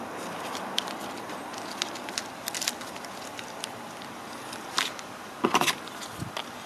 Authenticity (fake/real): fake